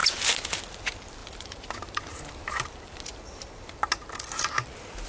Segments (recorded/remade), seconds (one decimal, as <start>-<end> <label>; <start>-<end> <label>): 0.0-1.2 recorded; 1.2-2.7 remade; 2.7-5.1 recorded